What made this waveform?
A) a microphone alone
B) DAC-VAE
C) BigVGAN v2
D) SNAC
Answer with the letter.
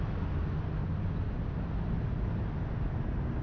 A